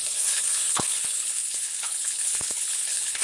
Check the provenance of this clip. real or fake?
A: fake